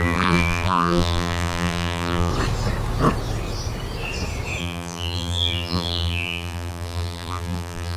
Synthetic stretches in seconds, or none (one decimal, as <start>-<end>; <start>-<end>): 0.0-2.3; 4.6-8.0